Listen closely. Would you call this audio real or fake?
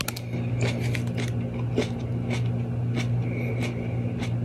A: real